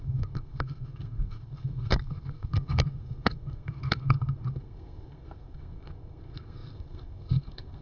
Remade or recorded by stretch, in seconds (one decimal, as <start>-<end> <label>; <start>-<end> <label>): 0.0-7.8 remade